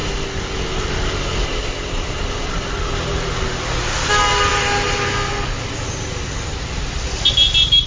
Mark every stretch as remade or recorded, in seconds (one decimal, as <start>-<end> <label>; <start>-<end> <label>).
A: 0.0-7.9 recorded